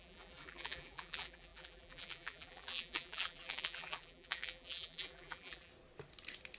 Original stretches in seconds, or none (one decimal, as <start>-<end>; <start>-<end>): 5.7-6.6